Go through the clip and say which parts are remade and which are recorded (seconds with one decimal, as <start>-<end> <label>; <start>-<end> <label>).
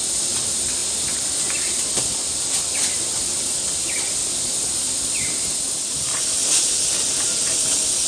0.0-8.1 recorded